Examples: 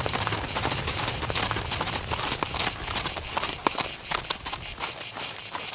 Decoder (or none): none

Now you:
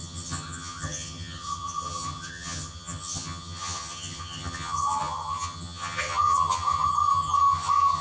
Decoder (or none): vocoder, HiFi-GAN